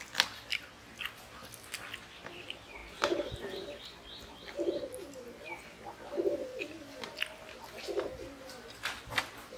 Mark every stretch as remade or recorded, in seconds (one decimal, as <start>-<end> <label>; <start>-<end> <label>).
0.0-9.6 recorded